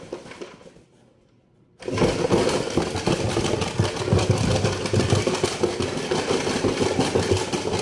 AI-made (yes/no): no